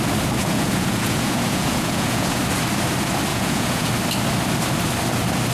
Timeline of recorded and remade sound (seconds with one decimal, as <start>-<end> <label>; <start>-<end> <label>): 0.0-0.4 recorded; 0.4-2.4 remade; 2.4-3.3 recorded; 3.3-3.9 remade; 3.9-5.5 recorded

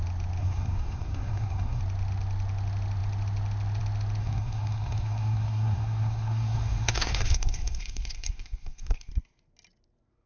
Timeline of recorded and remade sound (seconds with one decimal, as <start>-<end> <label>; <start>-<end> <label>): 0.0-0.4 recorded; 0.4-1.8 remade; 1.8-4.2 recorded; 4.2-9.1 remade; 9.1-10.3 recorded

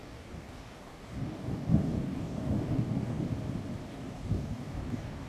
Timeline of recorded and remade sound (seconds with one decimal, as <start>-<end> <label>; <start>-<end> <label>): 0.0-3.2 remade; 3.2-3.9 recorded; 3.9-5.3 remade

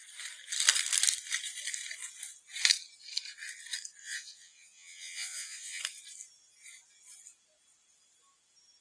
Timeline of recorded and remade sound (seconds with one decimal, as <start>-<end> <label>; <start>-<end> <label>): 0.0-4.0 recorded; 4.0-5.8 remade; 5.8-8.8 recorded

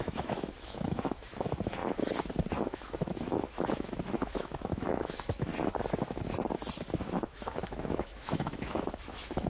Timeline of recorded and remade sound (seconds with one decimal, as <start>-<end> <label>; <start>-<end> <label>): 0.0-1.8 remade; 1.8-2.6 recorded; 2.6-5.5 remade; 5.5-7.0 recorded; 7.0-9.5 remade

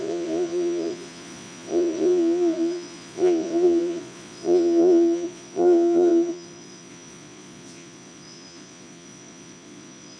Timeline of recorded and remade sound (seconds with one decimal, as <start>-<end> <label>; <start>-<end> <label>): 0.0-10.2 remade

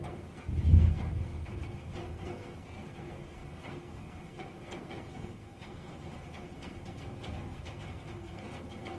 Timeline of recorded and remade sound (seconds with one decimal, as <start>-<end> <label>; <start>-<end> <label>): 0.0-9.0 remade